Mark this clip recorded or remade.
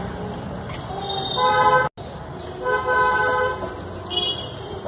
recorded